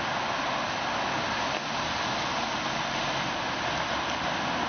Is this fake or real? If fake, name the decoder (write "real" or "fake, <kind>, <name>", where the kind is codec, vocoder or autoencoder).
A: real